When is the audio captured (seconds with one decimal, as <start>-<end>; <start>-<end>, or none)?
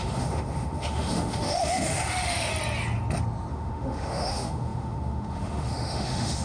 2.5-3.5